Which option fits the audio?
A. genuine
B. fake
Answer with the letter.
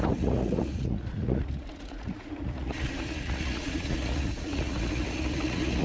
B